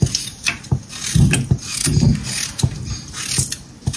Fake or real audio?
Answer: real